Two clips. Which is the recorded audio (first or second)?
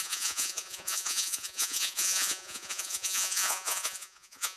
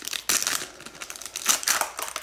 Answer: second